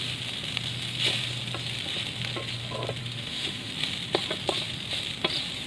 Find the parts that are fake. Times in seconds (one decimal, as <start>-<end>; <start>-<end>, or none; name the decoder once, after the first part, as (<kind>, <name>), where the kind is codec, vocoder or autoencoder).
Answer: 3.0-3.7 (autoencoder, DAC-VAE)